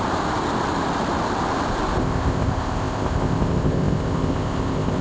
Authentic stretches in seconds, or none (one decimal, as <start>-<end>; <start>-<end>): 0.0-2.0